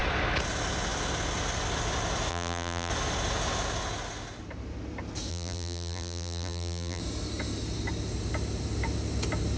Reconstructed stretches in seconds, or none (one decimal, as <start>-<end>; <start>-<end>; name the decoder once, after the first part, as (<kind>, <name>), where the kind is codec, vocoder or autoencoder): 2.3-2.9 (vocoder, BigVGAN v2); 5.3-7.0